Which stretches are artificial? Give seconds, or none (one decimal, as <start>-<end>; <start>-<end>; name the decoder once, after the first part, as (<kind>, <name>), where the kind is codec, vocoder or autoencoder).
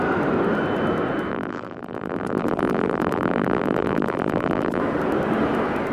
1.3-4.8 (vocoder, BigVGAN v2)